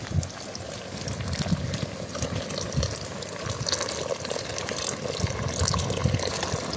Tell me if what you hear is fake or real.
real